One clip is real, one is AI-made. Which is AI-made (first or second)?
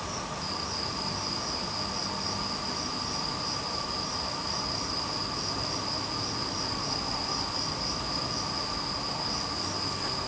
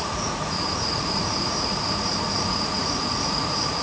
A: second